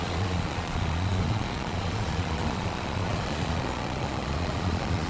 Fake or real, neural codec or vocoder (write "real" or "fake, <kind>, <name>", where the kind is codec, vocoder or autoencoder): fake, vocoder, Vocos